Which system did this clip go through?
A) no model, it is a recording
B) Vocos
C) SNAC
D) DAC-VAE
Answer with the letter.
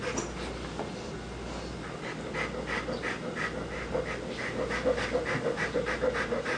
A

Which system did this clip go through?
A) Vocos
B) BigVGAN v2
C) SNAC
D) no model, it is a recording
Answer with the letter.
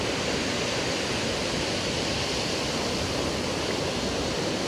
D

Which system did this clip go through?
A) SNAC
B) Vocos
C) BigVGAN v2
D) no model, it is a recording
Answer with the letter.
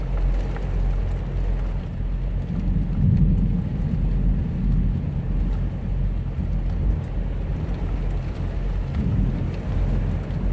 D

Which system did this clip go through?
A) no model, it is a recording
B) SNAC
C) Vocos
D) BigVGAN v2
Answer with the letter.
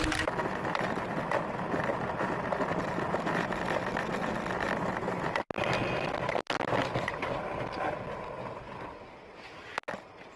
A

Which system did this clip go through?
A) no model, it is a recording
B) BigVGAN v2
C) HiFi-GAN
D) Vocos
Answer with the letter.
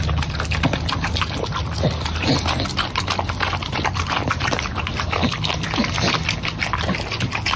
A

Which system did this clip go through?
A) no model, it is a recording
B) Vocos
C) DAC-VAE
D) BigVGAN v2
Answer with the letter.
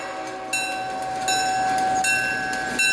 A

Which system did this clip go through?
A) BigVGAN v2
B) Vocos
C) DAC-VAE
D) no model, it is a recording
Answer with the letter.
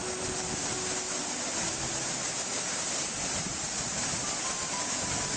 D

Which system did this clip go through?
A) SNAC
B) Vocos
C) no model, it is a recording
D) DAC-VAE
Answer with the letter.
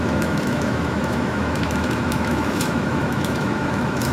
D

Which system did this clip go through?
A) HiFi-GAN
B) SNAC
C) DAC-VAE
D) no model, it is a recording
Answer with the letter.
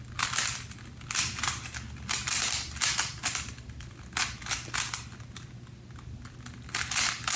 D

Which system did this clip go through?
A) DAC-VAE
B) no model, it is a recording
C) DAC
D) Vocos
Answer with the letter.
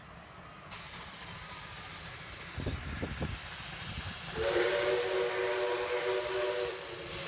B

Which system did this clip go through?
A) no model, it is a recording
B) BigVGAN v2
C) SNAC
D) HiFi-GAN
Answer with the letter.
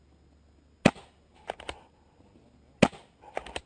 A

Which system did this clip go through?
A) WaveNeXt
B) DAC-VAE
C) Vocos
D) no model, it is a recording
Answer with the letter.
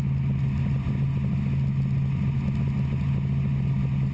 D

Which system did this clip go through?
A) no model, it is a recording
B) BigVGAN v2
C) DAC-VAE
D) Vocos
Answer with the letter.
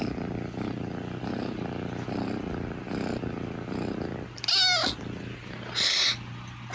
A